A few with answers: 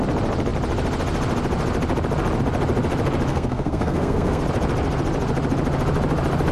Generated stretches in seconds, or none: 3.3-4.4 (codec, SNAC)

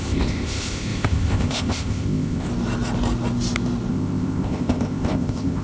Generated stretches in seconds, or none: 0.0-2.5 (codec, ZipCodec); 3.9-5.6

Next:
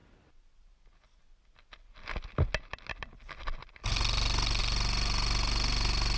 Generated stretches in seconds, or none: none

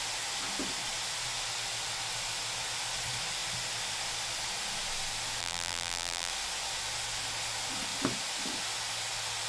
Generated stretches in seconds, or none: 5.4-6.3 (vocoder, BigVGAN v2)